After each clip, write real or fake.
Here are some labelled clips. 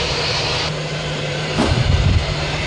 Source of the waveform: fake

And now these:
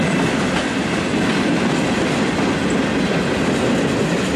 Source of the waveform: real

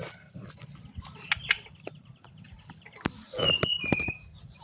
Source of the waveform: real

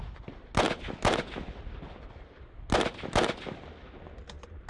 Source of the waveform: real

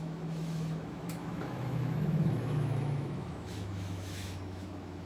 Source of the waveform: fake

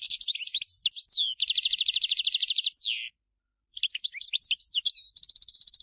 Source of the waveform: real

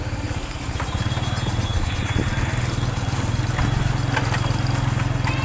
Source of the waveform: real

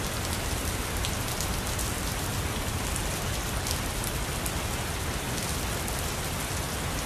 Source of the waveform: real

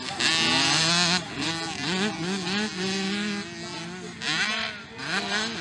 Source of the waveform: real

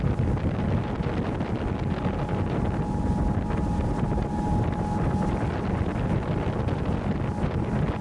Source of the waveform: real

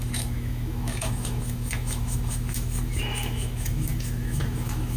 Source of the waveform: fake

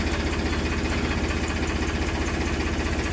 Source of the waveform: real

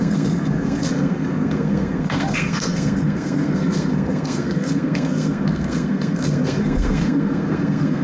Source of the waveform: fake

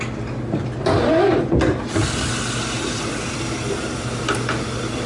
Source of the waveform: real